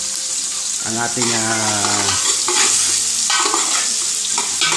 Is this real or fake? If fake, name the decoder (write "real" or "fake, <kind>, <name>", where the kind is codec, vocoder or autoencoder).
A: real